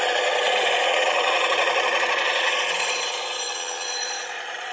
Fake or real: fake